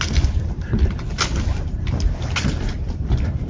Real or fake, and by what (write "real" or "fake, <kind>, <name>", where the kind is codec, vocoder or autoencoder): real